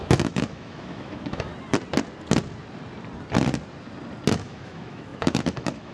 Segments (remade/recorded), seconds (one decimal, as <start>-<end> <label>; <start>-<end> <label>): 0.0-1.5 remade; 1.5-4.3 recorded; 4.3-5.9 remade